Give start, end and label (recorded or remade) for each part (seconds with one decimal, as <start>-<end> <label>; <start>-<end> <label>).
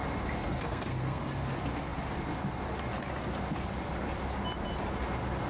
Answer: 0.0-0.4 recorded; 0.4-1.2 remade; 1.2-5.5 recorded